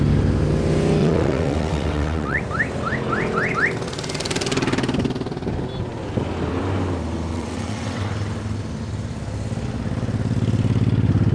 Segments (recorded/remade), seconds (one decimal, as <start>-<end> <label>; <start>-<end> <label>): 0.0-1.0 recorded; 1.0-2.4 remade; 2.4-7.3 recorded; 7.3-8.1 remade; 8.1-11.3 recorded